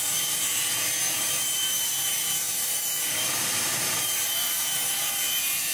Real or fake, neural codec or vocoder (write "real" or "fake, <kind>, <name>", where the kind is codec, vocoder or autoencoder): fake, vocoder, BigVGAN v2